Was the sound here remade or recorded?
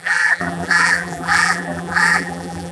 remade